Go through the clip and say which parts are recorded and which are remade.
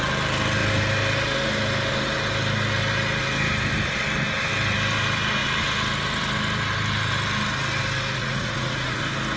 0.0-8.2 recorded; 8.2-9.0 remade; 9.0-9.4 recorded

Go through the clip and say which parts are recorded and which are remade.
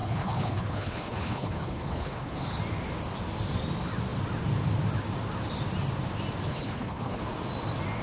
0.0-2.6 remade; 2.6-6.5 recorded; 6.5-7.2 remade; 7.2-8.0 recorded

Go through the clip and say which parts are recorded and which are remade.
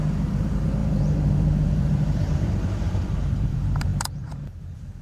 0.0-5.0 remade